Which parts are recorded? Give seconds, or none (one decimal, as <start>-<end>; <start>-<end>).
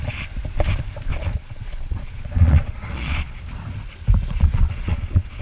0.0-1.1; 3.4-4.2